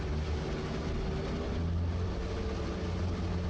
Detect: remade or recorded recorded